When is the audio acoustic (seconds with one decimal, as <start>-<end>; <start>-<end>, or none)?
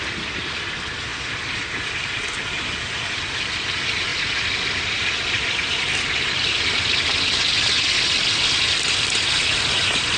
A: 0.0-10.2